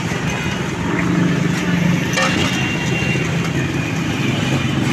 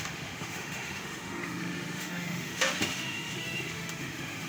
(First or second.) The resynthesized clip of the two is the second